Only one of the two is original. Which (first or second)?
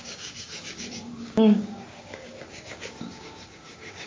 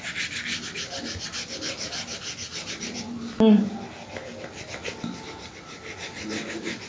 second